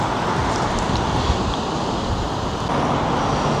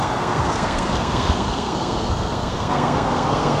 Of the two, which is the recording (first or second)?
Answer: first